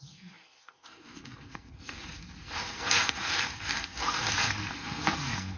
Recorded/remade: remade